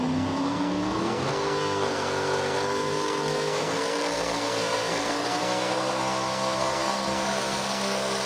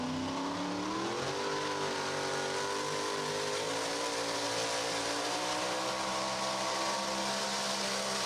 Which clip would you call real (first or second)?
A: second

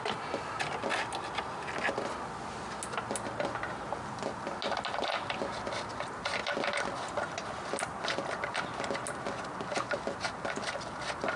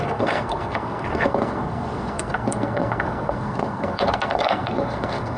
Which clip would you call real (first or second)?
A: first